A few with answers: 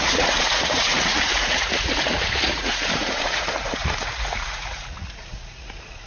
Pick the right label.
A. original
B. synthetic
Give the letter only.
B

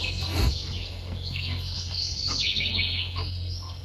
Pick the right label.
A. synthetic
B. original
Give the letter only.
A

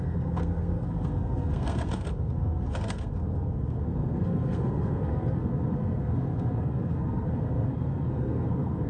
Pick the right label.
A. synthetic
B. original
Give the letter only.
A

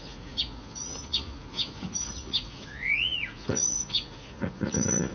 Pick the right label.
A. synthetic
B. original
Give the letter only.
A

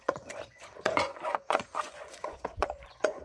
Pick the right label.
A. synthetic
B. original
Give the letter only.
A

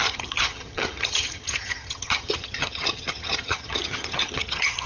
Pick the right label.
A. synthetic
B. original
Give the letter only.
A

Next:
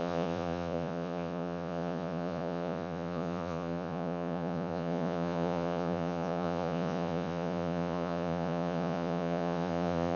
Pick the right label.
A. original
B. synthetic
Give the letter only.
B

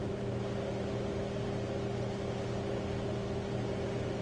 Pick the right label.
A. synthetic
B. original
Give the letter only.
B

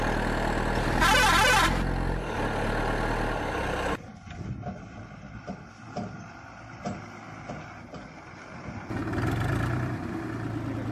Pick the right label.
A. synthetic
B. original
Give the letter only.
B